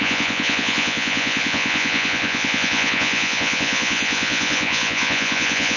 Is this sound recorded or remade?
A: remade